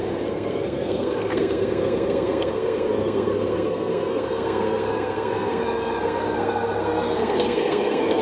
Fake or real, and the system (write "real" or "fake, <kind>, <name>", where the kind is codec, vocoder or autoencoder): fake, codec, SNAC